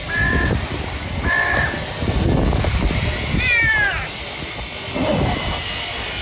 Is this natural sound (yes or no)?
yes